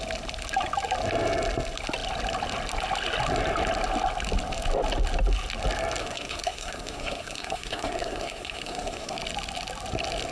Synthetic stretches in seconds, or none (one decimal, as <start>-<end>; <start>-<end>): 6.0-9.2